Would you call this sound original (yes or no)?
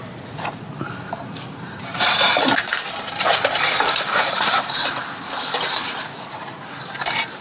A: no